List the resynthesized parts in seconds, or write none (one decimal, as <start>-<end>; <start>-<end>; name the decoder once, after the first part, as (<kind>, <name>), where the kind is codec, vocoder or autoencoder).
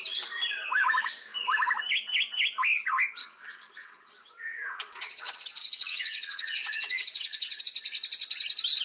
3.2-7.6 (vocoder, WaveNeXt)